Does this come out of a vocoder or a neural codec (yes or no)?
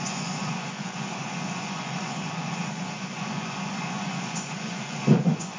yes